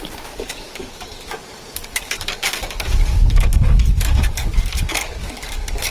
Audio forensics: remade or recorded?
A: remade